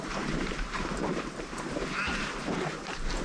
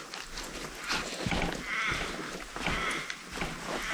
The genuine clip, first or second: second